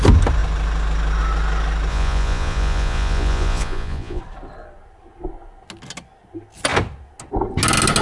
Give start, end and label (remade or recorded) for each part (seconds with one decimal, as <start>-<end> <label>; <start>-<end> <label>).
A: 0.0-1.9 recorded; 1.9-4.2 remade; 4.2-8.0 recorded